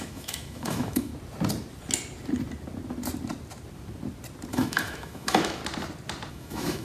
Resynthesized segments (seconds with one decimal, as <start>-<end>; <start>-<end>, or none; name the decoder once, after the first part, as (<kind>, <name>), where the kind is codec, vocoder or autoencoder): 0.0-1.1 (autoencoder, DAC-VAE); 4.5-5.6; 6.3-6.8